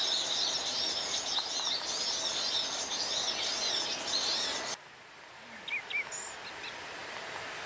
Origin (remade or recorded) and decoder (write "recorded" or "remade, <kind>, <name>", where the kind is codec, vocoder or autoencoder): recorded